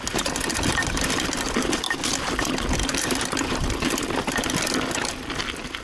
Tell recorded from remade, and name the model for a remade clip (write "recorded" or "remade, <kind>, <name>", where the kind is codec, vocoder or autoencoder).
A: recorded